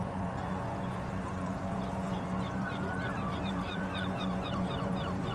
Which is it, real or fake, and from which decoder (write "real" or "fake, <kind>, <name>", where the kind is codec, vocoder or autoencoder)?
fake, vocoder, Vocos